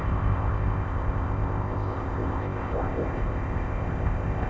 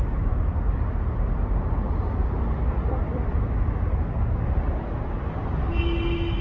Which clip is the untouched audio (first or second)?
second